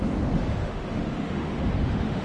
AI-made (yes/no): yes